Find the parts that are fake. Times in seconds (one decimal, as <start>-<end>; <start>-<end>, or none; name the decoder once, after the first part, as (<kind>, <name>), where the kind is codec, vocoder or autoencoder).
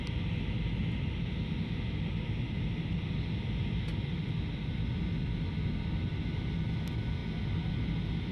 none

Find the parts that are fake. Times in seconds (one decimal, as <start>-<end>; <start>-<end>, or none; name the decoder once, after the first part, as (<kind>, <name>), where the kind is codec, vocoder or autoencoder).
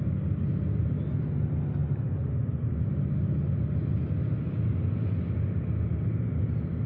none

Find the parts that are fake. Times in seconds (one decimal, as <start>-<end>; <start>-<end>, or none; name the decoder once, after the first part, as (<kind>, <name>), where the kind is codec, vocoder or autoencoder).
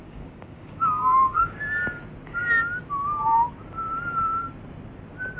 0.0-1.6 (codec, DAC)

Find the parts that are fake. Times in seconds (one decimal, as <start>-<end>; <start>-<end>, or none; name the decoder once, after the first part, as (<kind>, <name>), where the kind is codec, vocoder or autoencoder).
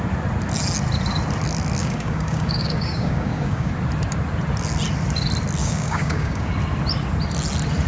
1.8-3.7 (codec, DAC); 5.6-6.5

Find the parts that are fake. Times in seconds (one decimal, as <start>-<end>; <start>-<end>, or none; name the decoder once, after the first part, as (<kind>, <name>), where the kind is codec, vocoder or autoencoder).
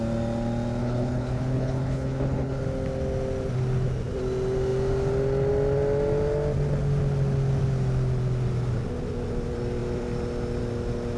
0.8-2.6 (codec, HILCodec)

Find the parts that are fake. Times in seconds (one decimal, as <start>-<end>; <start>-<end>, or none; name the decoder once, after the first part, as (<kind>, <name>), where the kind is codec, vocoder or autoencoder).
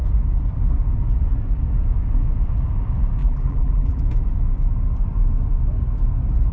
3.2-4.0 (vocoder, BigVGAN v2)